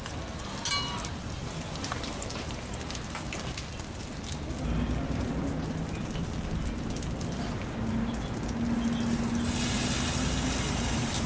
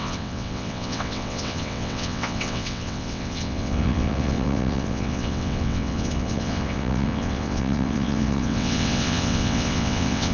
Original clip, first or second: first